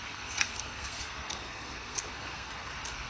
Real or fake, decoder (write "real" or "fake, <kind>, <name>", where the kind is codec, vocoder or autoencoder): fake, codec, SNAC